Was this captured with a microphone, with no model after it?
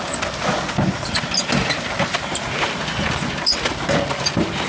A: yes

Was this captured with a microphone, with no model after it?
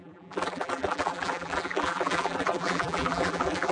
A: no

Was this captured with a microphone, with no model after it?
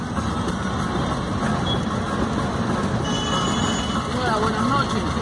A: yes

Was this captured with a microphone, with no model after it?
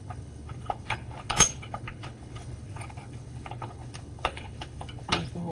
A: no